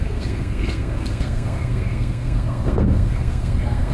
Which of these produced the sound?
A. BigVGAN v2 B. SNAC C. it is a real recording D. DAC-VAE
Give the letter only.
B